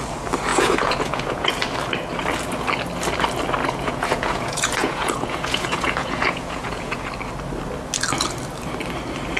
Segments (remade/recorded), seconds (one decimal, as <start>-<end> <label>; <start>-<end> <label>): 0.0-0.5 recorded; 0.5-1.5 remade; 1.5-3.6 recorded; 3.6-7.1 remade; 7.1-9.4 recorded